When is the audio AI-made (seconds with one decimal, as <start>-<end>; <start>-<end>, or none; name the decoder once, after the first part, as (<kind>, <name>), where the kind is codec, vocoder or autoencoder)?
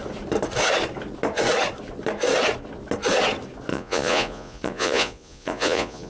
3.7-6.1 (vocoder, Vocos)